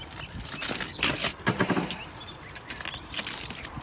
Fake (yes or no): no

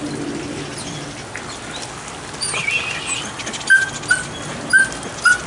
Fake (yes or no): no